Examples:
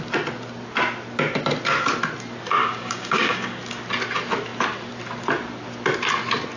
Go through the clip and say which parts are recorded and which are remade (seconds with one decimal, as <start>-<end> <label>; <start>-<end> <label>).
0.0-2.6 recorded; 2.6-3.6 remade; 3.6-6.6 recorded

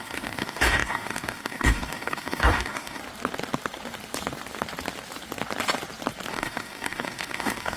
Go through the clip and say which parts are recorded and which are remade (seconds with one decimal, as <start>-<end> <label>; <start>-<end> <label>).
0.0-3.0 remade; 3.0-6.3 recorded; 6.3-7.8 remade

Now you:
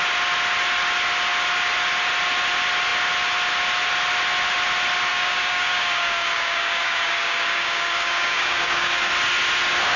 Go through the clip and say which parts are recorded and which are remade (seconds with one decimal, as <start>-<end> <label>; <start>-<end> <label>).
0.0-5.1 recorded; 5.1-9.1 remade; 9.1-10.0 recorded

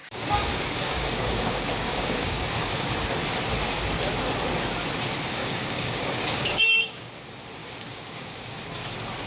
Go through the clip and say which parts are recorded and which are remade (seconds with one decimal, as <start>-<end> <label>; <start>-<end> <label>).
0.0-2.9 remade; 2.9-5.4 recorded; 5.4-7.1 remade; 7.1-7.6 recorded; 7.6-8.6 remade; 8.6-9.3 recorded

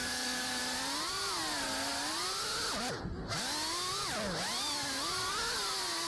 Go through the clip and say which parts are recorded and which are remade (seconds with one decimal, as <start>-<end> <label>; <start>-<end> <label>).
0.0-0.6 remade; 0.6-6.1 recorded